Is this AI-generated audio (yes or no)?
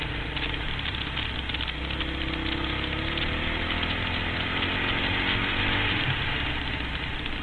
no